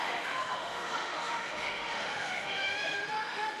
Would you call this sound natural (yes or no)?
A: no